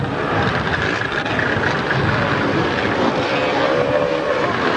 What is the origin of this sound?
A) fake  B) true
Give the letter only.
B